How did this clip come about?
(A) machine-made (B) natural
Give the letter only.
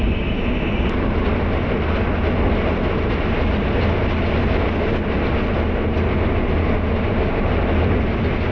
B